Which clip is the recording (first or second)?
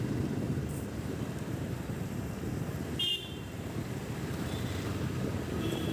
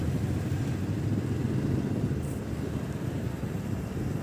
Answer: second